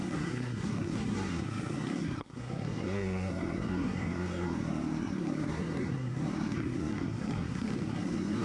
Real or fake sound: fake